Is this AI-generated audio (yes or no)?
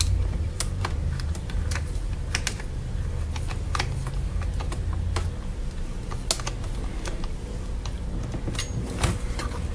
no